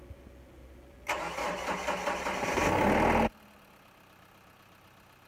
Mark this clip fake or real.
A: real